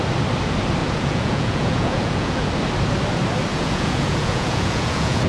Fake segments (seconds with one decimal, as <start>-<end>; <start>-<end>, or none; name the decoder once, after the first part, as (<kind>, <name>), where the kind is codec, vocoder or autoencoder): 0.8-2.5 (vocoder, Vocos); 3.5-5.3